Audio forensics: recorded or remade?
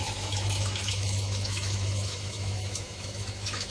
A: remade